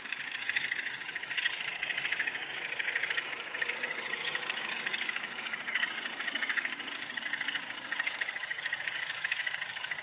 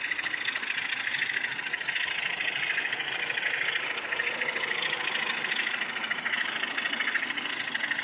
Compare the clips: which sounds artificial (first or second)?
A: first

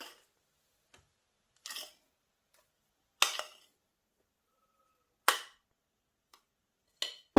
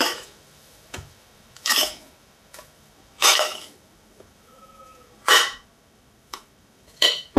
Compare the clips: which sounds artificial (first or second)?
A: second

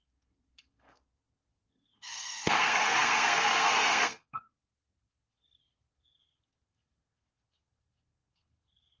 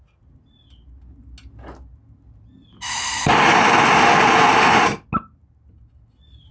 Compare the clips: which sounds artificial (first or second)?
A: first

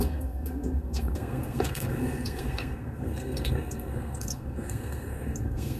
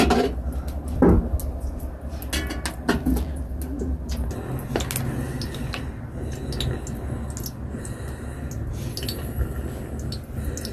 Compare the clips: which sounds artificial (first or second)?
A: first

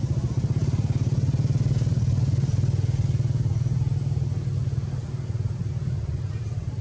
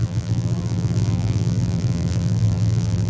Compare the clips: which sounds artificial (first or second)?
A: second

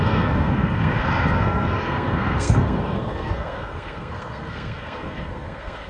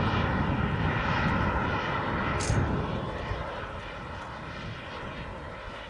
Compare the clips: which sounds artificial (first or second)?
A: first